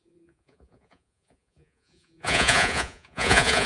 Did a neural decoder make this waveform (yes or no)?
yes